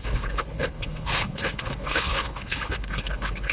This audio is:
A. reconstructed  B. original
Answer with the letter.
A